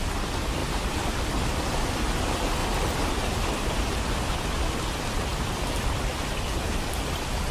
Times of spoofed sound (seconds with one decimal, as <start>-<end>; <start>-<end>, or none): 0.6-1.2; 2.6-3.1; 5.3-6.1